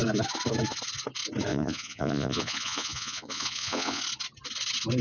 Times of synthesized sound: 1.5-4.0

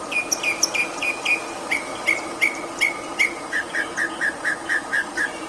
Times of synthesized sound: 0.0-5.5

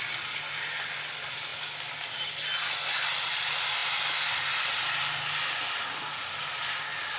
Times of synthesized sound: none